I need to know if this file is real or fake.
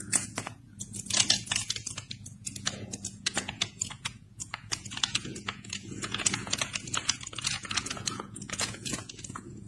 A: fake